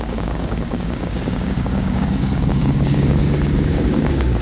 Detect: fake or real fake